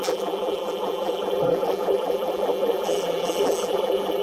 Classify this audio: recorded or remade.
remade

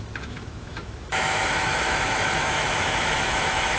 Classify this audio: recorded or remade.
remade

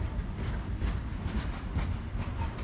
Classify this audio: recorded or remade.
recorded